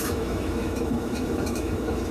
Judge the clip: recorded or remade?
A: remade